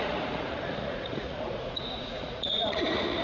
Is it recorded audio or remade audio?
remade